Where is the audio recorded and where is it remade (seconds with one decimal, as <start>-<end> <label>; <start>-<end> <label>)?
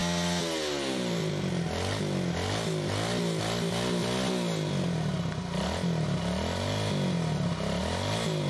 0.0-8.5 recorded